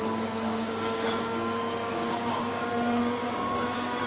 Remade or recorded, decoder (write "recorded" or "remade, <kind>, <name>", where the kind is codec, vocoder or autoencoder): remade, codec, DAC